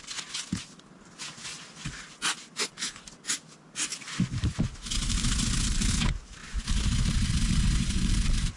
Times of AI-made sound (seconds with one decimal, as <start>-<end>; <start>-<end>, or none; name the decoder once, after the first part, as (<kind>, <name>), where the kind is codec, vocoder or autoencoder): none